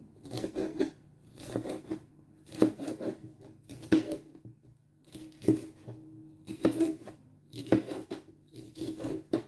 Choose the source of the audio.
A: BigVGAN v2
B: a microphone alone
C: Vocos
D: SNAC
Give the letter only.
D